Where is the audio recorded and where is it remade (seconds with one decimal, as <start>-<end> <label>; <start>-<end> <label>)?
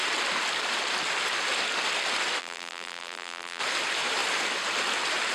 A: 0.0-2.4 recorded; 2.4-3.6 remade; 3.6-5.3 recorded